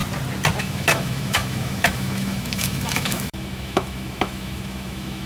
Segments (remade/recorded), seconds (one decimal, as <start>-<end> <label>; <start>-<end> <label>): 0.0-0.6 recorded; 0.6-5.3 remade